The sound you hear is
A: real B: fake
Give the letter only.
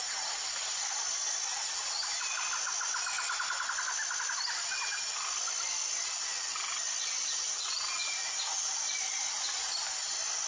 A